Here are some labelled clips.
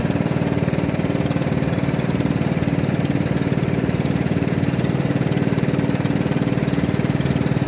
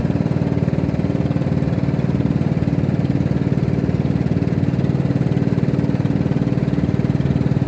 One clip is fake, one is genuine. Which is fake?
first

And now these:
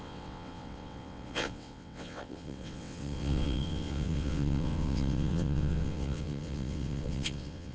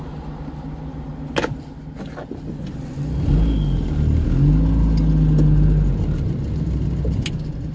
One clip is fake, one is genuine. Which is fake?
first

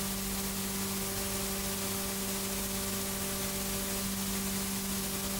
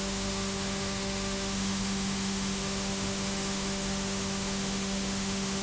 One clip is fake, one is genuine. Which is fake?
second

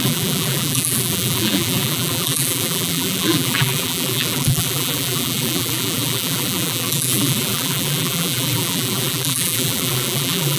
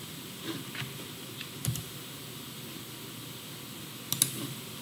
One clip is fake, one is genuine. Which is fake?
first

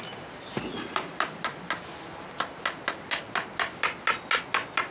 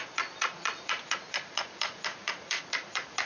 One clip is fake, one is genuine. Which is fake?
second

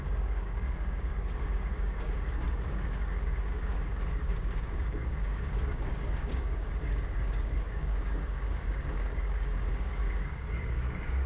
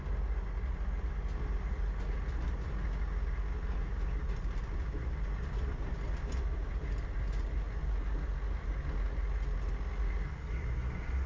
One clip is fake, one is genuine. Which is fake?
first